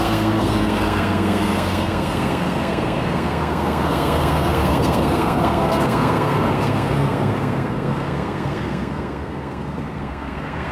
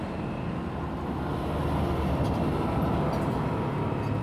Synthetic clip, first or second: first